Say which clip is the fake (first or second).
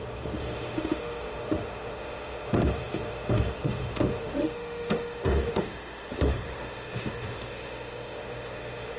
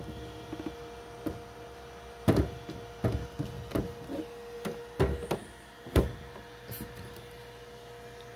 first